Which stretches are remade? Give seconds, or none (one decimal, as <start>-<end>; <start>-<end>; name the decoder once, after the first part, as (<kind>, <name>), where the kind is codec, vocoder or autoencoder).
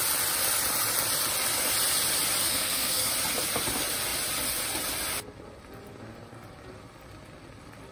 2.4-3.1 (codec, SNAC)